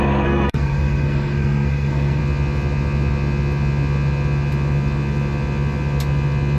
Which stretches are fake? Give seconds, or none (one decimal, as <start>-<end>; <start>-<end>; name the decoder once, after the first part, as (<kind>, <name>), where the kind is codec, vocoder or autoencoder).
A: 0.0-2.2 (codec, SNAC)